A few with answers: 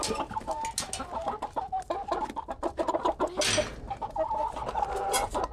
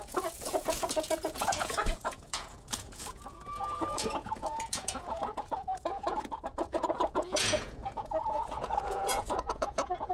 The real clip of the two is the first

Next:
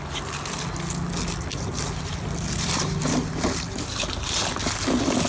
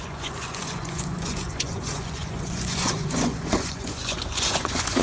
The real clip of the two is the first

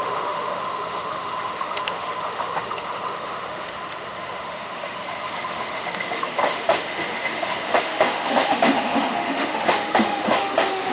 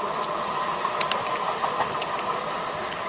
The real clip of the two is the second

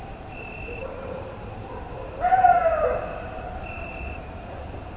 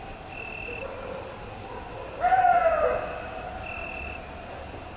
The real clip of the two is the second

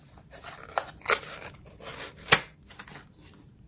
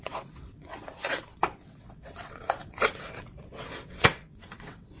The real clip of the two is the first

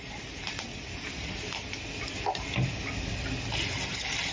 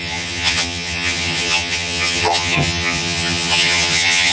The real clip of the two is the first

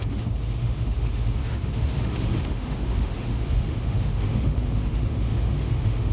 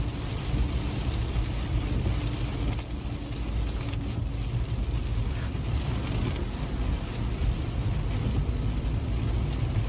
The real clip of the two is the second